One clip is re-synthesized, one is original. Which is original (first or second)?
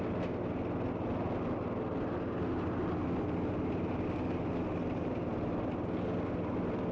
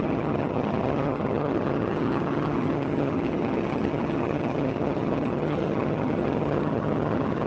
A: first